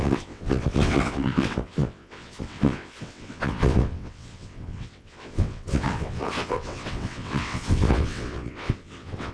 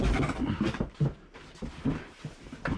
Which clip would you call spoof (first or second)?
first